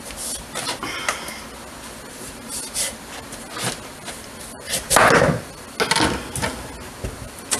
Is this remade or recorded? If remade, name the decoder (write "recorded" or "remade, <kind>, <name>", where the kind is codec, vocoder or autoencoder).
recorded